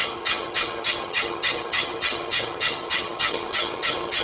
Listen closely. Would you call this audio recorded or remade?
remade